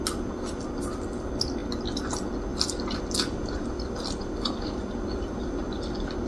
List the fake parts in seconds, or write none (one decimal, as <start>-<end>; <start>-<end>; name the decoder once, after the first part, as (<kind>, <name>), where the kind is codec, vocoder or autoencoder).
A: 2.5-5.7 (vocoder, BigVGAN v2)